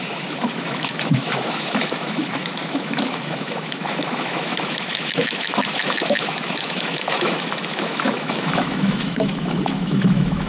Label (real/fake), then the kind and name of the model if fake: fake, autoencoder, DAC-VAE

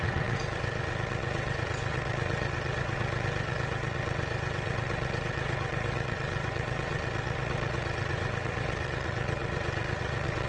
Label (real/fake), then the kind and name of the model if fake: fake, vocoder, WaveNeXt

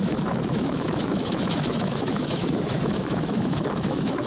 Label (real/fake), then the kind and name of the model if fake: fake, autoencoder, DAC-VAE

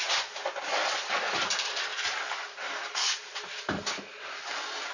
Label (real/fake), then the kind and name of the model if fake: real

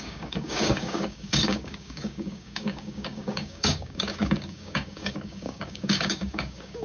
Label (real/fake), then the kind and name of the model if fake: fake, codec, DAC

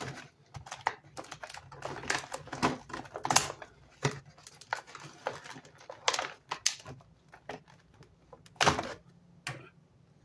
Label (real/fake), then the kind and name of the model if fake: real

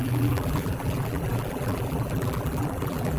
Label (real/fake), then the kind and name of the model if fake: fake, vocoder, BigVGAN v2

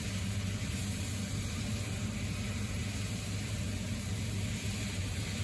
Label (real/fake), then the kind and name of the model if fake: fake, vocoder, BigVGAN v2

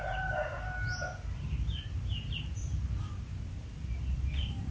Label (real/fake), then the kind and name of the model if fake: real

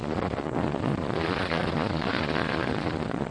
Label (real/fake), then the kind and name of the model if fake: fake, vocoder, Vocos